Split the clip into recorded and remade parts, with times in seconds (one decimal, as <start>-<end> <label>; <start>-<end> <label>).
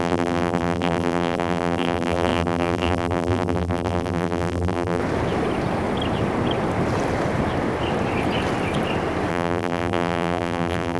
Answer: 0.0-5.0 remade; 5.0-9.3 recorded; 9.3-11.0 remade